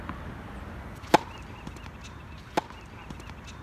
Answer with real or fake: real